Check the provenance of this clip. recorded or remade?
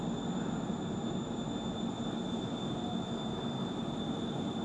recorded